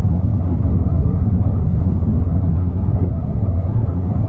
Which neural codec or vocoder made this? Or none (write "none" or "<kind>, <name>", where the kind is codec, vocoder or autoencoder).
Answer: codec, SNAC